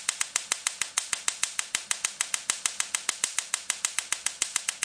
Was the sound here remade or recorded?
recorded